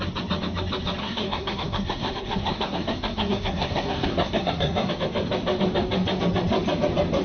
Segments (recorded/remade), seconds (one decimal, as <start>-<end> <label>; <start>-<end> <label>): 0.0-1.0 recorded; 1.0-4.9 remade; 4.9-7.2 recorded